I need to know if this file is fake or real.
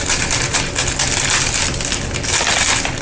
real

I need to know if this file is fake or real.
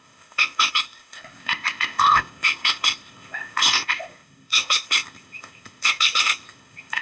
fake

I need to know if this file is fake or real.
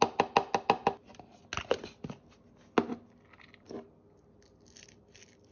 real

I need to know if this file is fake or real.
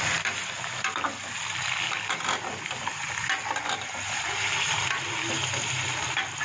real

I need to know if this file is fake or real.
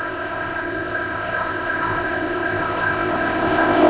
fake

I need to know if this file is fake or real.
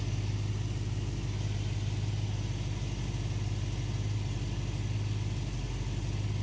real